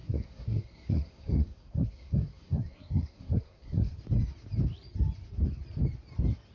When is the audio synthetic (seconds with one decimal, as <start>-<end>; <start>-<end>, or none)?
0.0-3.9